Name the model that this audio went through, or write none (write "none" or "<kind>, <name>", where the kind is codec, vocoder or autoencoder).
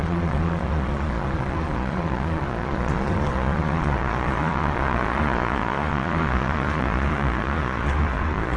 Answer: vocoder, Vocos